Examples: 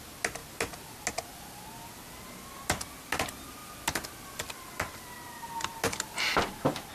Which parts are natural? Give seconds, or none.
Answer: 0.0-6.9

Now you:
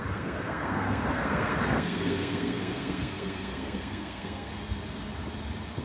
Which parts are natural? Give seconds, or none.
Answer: 4.5-5.8

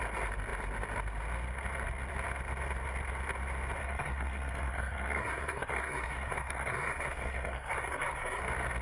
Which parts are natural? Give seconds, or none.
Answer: 0.0-3.8; 8.4-8.8

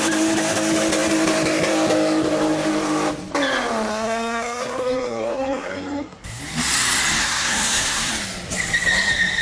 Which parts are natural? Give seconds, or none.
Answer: 0.0-3.9; 6.4-7.2; 8.1-9.4

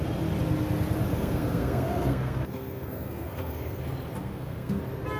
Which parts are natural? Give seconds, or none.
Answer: 0.0-1.1; 3.8-4.2; 4.8-5.2

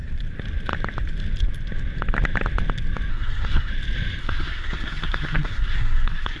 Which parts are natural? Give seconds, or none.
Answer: 0.0-3.1; 3.7-4.2